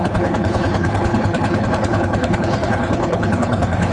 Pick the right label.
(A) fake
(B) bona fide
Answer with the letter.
A